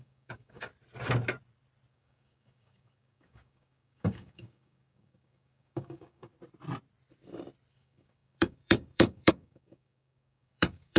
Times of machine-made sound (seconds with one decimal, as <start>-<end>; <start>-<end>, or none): 0.0-0.7; 1.9-6.3; 7.7-11.0